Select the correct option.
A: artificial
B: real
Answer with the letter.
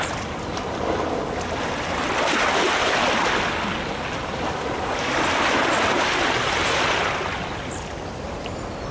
B